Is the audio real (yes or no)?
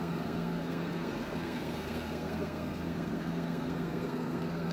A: no